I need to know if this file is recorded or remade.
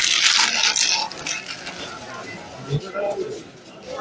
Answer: recorded